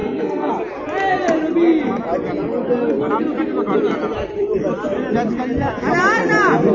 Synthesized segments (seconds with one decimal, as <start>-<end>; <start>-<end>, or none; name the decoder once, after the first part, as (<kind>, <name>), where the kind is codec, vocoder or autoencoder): 0.0-0.5 (codec, SNAC)